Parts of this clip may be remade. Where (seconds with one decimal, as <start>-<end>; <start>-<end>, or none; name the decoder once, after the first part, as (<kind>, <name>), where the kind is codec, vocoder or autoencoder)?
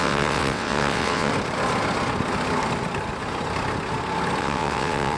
0.0-1.3 (vocoder, WaveNeXt); 4.4-5.2